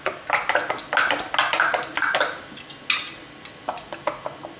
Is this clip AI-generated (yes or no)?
no